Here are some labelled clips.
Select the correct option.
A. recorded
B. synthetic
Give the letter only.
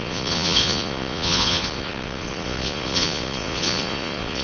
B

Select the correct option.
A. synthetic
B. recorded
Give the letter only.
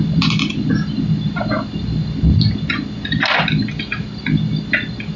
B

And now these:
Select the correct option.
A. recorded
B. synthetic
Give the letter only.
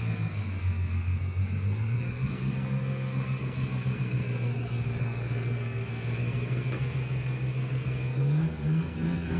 B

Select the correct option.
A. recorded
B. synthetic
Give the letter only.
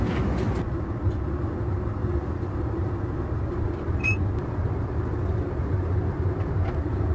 A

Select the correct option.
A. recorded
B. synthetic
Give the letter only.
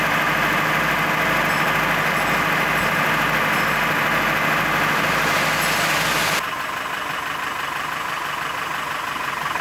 A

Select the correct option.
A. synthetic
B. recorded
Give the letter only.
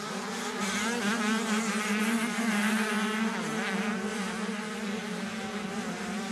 B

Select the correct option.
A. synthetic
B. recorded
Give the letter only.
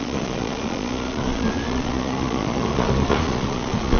A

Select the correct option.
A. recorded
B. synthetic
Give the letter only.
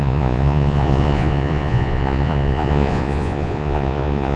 B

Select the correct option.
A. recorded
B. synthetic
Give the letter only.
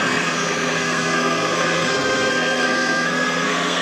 B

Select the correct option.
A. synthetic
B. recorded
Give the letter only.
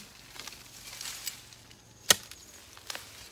B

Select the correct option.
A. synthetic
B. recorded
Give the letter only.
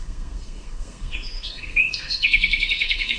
A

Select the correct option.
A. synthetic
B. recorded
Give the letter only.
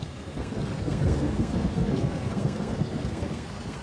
A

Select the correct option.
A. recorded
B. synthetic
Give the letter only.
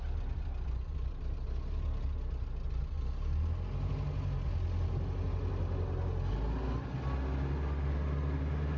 A